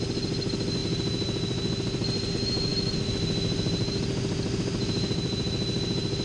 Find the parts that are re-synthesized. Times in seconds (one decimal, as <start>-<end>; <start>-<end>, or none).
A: none